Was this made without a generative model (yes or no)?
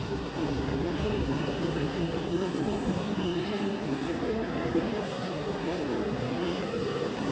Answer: no